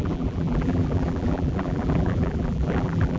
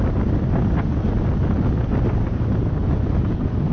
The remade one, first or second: first